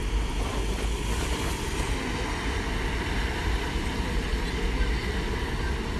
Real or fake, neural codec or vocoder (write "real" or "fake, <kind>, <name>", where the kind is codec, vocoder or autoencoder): real